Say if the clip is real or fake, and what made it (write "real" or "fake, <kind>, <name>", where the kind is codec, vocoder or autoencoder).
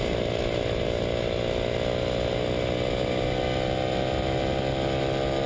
real